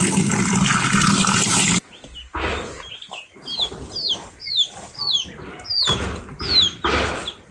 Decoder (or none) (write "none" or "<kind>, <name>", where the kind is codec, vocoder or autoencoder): none